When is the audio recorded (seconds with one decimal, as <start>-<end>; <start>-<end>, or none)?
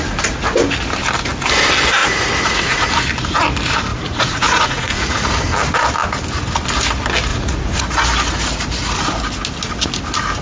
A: 0.0-2.0; 2.9-3.9; 5.4-7.3; 7.8-10.4